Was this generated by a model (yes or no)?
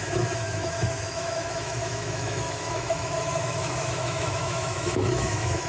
yes